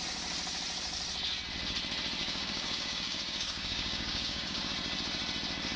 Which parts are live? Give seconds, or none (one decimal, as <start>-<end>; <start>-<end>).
0.0-2.2; 4.6-5.8